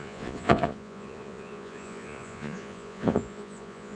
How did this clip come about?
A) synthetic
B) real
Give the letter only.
A